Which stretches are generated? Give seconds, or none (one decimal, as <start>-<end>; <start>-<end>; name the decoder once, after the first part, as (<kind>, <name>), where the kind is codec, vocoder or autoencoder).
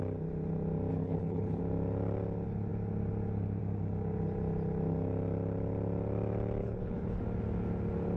0.9-1.6 (codec, HILCodec); 6.6-7.2